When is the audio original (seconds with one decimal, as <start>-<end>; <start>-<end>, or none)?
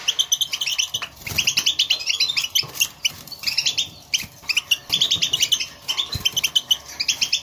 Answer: 0.0-7.4